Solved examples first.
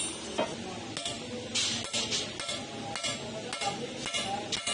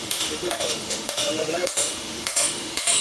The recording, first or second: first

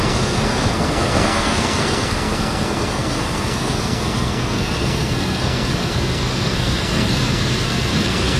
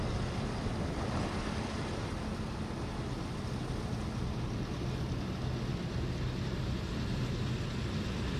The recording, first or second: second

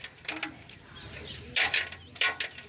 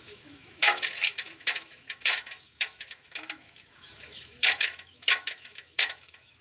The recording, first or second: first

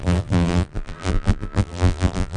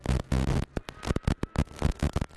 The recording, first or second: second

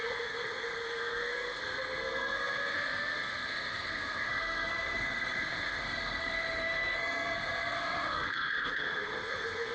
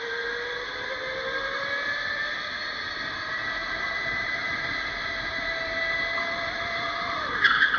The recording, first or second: second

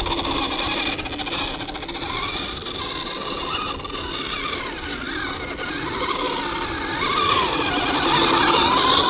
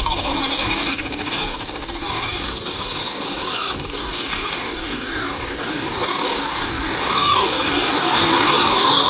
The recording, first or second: first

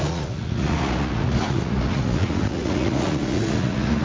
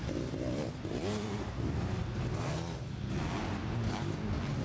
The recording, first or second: second